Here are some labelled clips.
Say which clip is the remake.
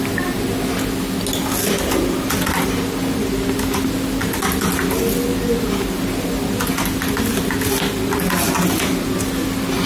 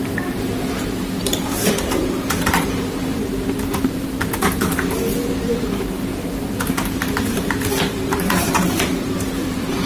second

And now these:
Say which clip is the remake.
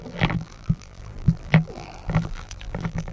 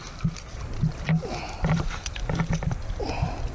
first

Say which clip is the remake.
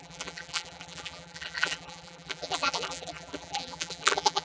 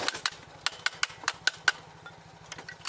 first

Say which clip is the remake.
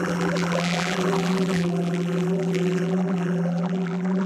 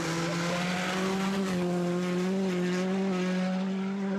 first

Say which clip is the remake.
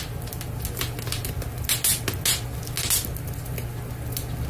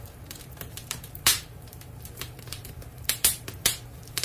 second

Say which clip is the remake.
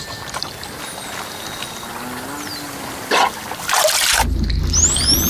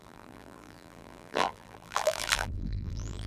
second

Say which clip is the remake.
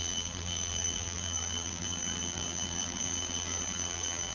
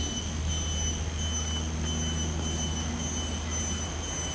first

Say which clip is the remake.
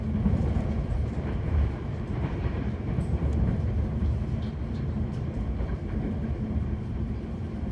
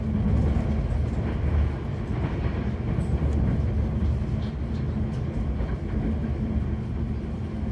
first